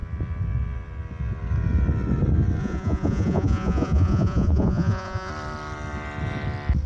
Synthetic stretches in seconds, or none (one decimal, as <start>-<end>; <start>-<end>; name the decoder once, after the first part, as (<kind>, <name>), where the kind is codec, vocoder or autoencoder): 2.6-5.3 (vocoder, Vocos)